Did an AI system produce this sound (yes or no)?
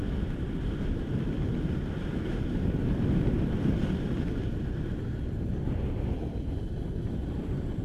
yes